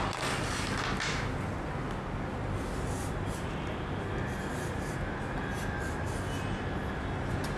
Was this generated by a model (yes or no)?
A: no